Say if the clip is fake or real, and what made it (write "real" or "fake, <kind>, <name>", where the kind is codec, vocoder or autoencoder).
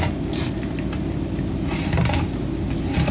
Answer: real